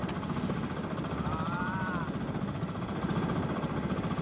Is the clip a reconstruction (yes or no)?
yes